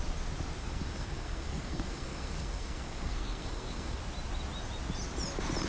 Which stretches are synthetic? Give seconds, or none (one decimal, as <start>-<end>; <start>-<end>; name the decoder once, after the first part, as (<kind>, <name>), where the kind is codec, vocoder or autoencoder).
0.6-4.0 (codec, SNAC)